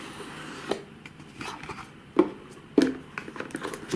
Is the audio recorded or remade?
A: recorded